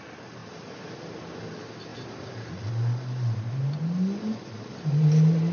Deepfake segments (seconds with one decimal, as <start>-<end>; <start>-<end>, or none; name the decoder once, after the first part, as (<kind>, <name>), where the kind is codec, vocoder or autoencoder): 1.9-2.7 (vocoder, BigVGAN v2)